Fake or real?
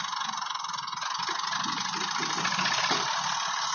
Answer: real